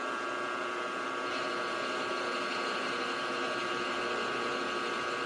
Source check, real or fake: real